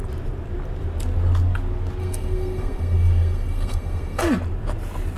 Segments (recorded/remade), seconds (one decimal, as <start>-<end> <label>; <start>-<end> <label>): 0.0-2.0 recorded; 2.0-4.2 remade; 4.2-5.2 recorded